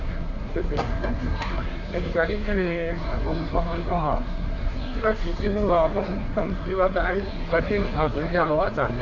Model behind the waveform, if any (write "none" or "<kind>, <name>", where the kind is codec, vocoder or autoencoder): codec, SNAC